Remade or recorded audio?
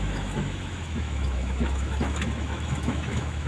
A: remade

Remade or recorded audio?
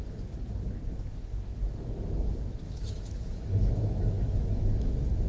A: remade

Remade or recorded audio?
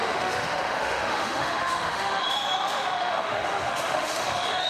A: remade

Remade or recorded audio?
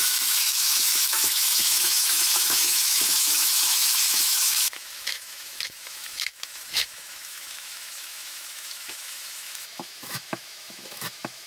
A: remade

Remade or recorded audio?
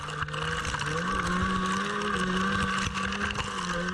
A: recorded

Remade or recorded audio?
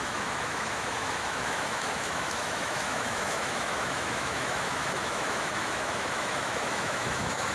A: remade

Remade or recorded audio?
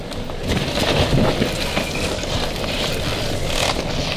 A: recorded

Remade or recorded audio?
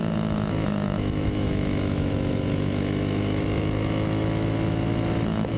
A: remade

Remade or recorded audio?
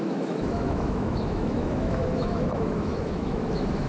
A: remade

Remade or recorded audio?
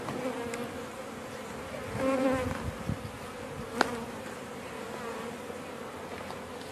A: recorded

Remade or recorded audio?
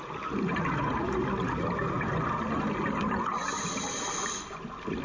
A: recorded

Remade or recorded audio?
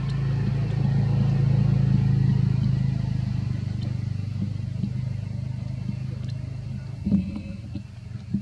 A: recorded